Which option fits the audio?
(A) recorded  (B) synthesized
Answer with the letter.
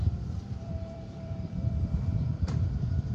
B